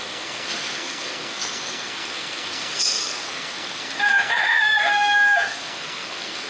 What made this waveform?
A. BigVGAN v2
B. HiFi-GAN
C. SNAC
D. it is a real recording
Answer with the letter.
C